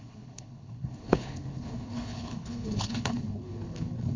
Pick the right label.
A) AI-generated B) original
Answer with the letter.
A